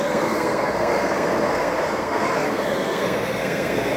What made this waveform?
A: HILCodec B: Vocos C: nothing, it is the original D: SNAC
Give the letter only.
D